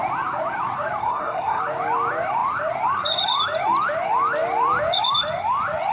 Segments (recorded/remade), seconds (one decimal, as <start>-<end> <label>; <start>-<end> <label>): 0.0-1.0 recorded; 1.0-1.6 remade; 1.6-5.9 recorded